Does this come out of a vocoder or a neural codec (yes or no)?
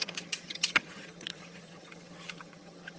yes